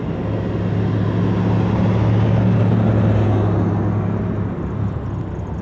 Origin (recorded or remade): recorded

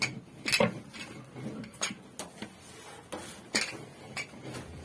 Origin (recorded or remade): recorded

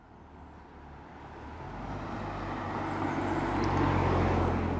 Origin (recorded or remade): recorded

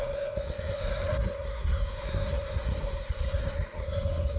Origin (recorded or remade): remade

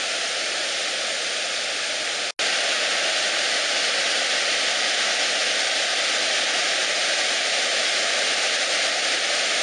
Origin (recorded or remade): recorded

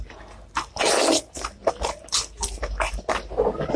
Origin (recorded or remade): recorded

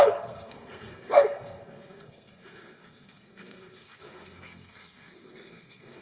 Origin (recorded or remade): remade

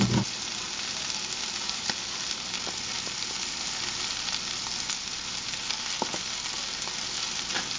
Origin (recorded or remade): recorded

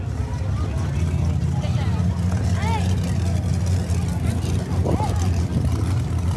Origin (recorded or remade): recorded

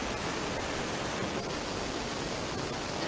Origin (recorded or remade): recorded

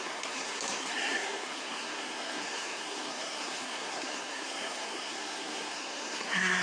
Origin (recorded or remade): remade